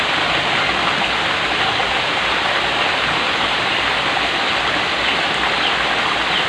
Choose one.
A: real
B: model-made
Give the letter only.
A